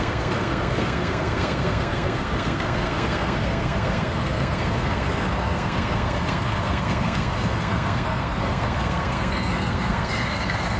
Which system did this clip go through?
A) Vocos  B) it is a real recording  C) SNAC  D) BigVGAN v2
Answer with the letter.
C